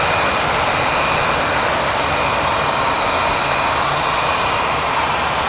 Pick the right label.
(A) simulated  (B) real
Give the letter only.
B